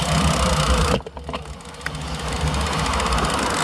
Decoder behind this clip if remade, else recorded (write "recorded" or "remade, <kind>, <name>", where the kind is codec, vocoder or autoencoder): recorded